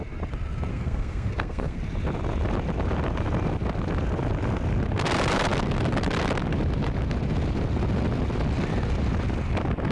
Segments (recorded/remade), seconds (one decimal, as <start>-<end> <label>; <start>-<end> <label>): 0.0-0.7 recorded; 0.7-1.8 remade; 1.8-9.9 recorded